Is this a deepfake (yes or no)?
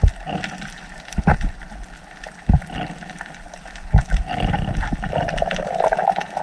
no